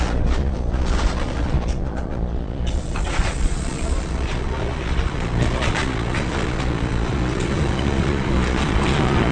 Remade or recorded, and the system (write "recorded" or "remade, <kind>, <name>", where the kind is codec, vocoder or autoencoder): remade, vocoder, Vocos